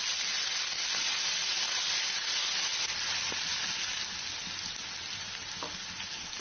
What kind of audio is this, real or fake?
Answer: real